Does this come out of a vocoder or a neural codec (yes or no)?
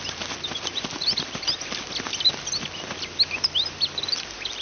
no